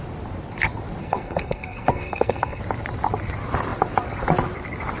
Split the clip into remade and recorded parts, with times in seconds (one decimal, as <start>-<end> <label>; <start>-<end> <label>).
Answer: 0.0-1.0 recorded; 1.0-2.6 remade; 2.6-5.0 recorded